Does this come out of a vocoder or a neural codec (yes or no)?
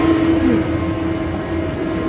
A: no